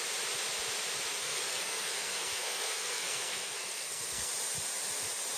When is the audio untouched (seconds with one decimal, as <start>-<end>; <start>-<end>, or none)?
0.0-1.2; 4.3-5.4